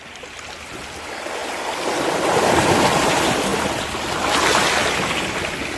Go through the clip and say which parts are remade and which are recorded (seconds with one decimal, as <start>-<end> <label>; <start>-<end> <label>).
0.0-5.8 recorded

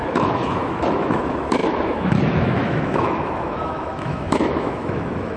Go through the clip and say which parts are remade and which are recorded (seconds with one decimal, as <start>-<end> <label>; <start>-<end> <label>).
0.0-5.4 remade

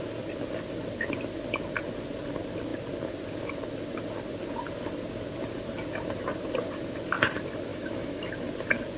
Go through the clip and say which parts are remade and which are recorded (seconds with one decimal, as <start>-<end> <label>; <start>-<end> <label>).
0.0-7.7 recorded; 7.7-8.3 remade; 8.3-9.0 recorded

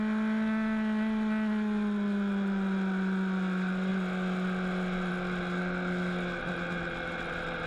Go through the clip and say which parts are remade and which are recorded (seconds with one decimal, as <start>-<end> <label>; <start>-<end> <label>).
0.0-7.7 recorded

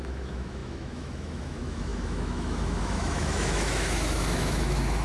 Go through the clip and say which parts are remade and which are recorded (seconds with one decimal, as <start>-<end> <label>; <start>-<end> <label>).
0.0-5.0 remade

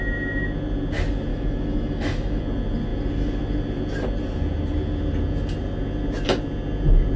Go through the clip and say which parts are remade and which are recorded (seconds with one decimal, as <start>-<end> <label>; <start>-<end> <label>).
0.0-1.3 recorded; 1.3-2.4 remade; 2.4-7.2 recorded

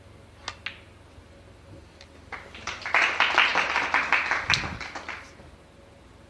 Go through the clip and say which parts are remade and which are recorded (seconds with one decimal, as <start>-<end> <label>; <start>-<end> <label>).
0.0-6.3 recorded

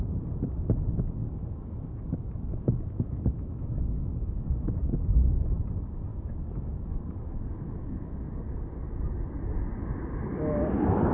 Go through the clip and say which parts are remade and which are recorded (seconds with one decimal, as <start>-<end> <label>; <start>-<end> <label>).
0.0-1.2 recorded; 1.2-4.4 remade; 4.4-6.1 recorded; 6.1-8.3 remade; 8.3-11.1 recorded